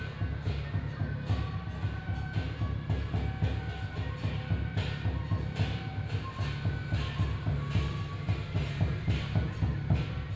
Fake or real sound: real